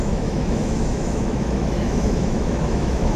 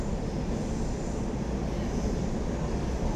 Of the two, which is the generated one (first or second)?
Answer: first